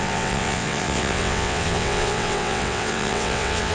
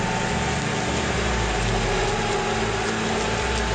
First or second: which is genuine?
second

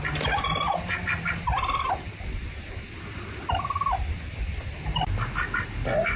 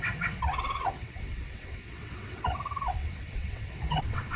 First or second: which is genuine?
first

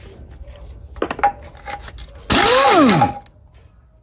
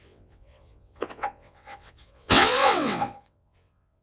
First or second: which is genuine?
first